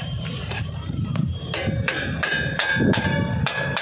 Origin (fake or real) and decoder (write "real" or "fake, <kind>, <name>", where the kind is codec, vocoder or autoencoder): fake, vocoder, BigVGAN v2